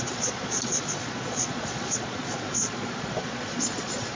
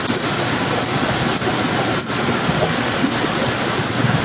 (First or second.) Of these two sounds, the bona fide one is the second